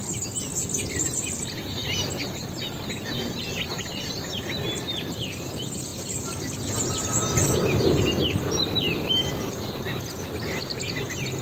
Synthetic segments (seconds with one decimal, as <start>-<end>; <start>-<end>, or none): none